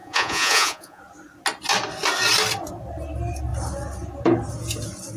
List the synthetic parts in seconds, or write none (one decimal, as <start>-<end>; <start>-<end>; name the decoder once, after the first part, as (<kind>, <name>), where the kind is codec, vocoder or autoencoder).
0.0-1.0 (vocoder, Vocos)